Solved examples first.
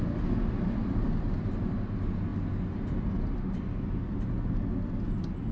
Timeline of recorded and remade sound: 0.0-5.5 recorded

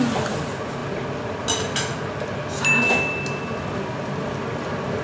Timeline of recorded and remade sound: 0.0-5.0 recorded